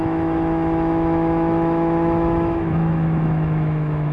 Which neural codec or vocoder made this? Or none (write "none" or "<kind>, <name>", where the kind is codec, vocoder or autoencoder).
autoencoder, DAC-VAE